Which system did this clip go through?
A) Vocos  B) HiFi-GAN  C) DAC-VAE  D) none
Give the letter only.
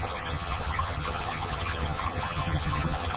B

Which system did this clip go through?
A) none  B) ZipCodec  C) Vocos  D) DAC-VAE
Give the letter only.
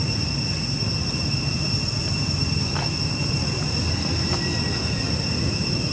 A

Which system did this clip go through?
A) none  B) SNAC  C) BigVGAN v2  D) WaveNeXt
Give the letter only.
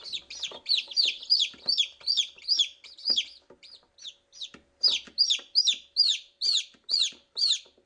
C